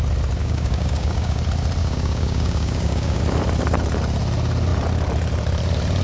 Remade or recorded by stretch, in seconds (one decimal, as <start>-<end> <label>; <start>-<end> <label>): 0.0-0.4 recorded; 0.4-1.4 remade; 1.4-1.8 recorded; 1.8-3.2 remade; 3.2-6.0 recorded